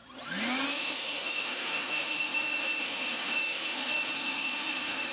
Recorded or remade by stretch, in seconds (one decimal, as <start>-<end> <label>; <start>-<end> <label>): 0.0-0.7 recorded; 0.7-5.1 remade